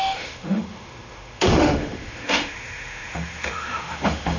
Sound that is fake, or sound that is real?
fake